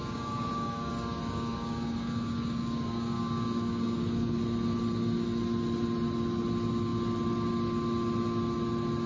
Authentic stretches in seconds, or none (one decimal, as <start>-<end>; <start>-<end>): 4.4-9.1